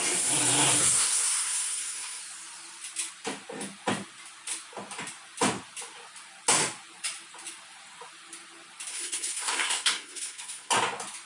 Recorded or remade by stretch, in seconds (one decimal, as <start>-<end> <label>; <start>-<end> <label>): 0.0-0.8 recorded; 0.8-2.2 remade; 2.2-8.9 recorded; 8.9-10.7 remade; 10.7-11.3 recorded